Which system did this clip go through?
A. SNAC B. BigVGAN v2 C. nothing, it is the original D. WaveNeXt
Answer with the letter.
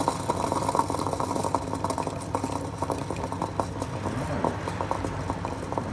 C